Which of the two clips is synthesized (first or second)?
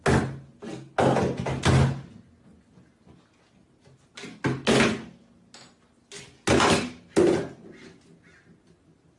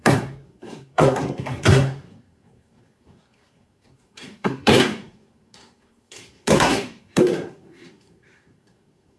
second